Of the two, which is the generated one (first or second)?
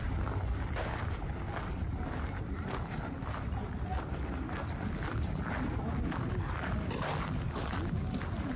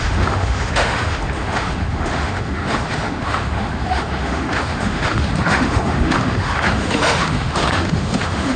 second